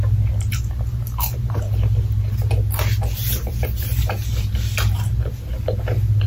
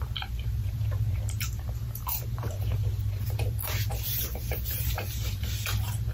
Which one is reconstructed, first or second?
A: second